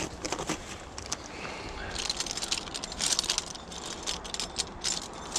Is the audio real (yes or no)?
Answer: yes